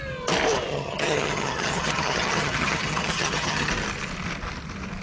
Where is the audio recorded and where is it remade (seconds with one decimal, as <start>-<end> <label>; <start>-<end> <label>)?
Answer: 0.0-0.7 recorded; 0.7-3.7 remade; 3.7-5.0 recorded